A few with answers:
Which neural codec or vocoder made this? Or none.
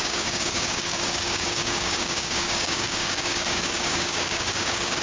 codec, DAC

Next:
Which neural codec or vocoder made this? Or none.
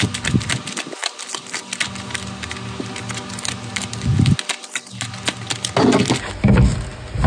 none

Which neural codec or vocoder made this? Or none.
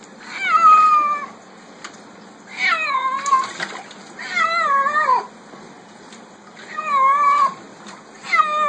none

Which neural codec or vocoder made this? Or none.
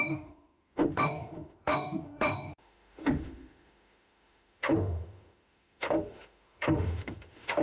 autoencoder, DAC-VAE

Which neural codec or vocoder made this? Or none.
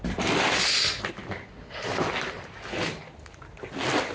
none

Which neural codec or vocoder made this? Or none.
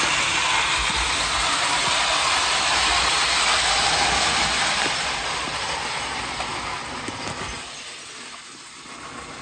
none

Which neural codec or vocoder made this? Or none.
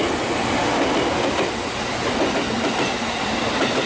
none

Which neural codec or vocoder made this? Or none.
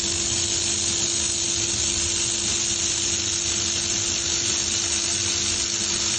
none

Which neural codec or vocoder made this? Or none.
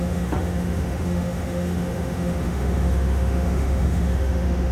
autoencoder, DAC-VAE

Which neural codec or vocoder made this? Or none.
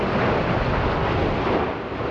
none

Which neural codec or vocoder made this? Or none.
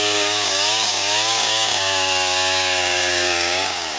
codec, DAC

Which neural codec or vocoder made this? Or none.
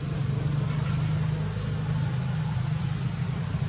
none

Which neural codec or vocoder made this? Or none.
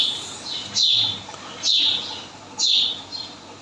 none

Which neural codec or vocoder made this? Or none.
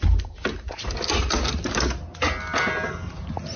none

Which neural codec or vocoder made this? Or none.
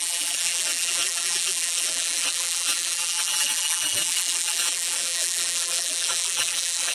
vocoder, BigVGAN v2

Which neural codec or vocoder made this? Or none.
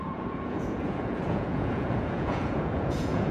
vocoder, Vocos